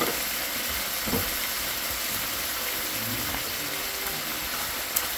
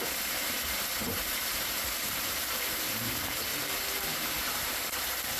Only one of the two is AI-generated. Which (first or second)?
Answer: second